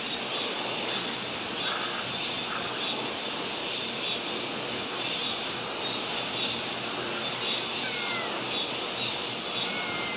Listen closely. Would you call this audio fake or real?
real